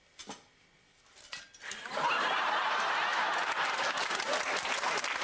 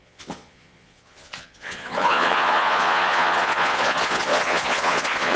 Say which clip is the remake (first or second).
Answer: second